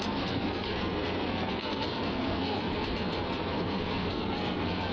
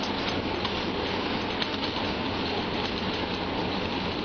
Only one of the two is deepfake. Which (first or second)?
first